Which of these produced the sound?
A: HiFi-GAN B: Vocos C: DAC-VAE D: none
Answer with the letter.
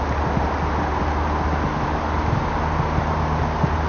D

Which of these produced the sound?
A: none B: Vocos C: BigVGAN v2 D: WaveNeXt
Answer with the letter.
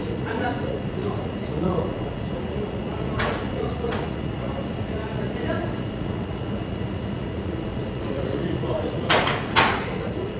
B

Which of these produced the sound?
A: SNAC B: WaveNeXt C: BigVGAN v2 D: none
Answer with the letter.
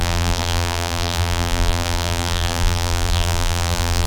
C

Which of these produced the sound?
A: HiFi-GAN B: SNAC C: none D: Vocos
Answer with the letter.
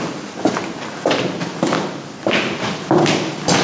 C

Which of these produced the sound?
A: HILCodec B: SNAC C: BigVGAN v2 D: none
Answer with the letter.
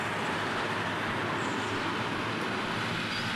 D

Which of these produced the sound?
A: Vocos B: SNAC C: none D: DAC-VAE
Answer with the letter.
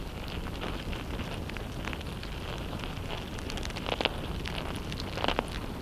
C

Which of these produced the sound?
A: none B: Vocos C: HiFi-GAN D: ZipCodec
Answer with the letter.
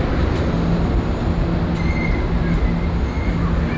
A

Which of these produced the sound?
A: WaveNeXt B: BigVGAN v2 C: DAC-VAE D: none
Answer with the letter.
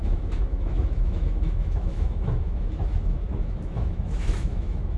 C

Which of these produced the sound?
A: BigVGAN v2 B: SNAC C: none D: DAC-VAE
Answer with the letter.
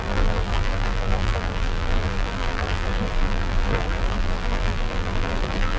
A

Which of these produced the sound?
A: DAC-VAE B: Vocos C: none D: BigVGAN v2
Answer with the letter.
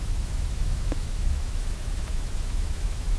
A